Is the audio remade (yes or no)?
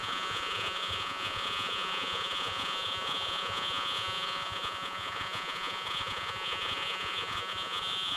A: yes